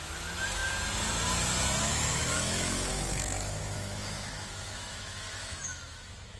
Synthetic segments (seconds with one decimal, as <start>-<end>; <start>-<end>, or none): 0.0-0.6; 1.8-6.4